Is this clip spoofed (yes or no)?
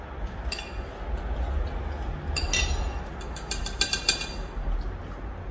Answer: no